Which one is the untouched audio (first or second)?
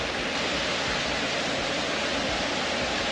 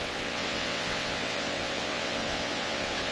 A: first